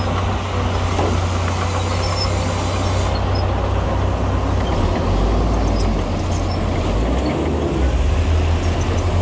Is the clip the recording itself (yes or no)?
yes